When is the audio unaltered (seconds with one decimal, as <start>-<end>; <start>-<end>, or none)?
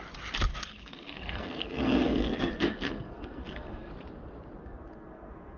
0.0-0.5; 3.9-4.6